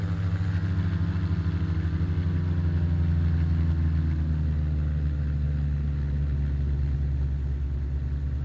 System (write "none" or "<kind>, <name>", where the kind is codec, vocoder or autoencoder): none